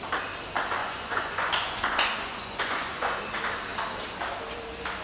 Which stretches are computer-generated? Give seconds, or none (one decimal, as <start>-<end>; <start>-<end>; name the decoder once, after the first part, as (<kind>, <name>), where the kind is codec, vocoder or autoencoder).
0.8-3.2 (vocoder, Vocos)